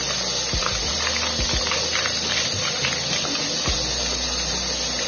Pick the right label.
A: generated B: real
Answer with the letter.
B